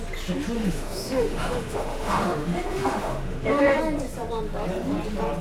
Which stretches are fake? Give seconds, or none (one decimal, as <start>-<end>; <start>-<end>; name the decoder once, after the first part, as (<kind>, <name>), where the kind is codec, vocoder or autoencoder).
0.6-3.8 (autoencoder, DAC-VAE)